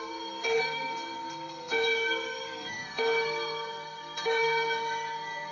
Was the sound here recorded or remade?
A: remade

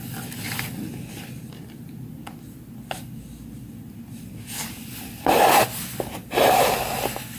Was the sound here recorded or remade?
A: recorded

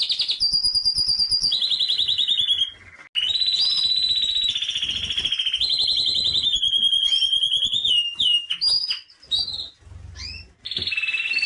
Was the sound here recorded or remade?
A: recorded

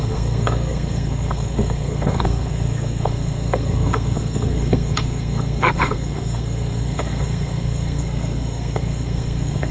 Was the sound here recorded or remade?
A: remade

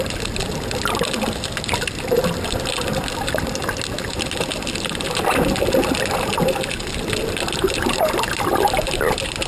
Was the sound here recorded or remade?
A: recorded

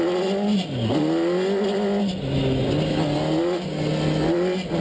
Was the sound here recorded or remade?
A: recorded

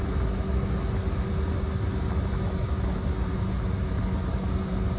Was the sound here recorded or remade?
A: recorded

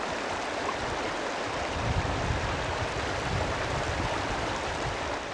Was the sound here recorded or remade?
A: remade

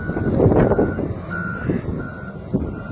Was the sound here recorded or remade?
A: recorded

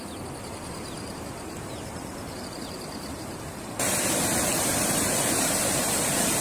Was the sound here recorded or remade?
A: remade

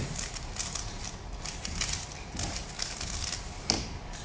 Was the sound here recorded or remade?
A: recorded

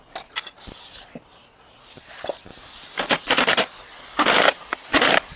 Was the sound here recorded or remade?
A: recorded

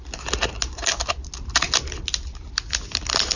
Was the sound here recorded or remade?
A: recorded